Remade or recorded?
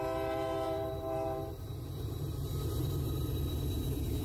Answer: remade